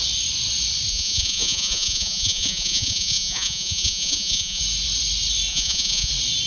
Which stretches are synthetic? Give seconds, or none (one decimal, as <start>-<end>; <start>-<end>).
0.9-4.6; 5.5-6.1